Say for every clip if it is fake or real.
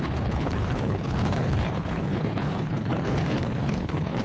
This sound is fake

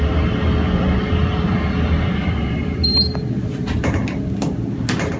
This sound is real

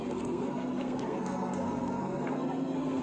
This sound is fake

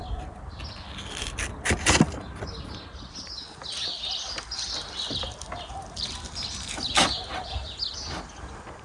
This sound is real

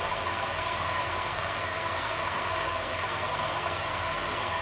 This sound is fake